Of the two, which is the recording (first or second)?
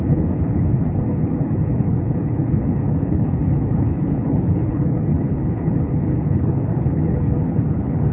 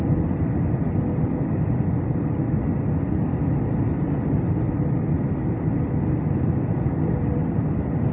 second